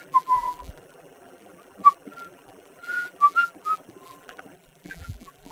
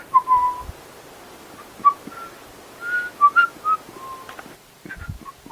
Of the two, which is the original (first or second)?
second